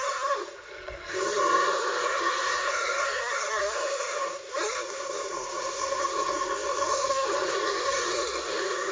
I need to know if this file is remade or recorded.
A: remade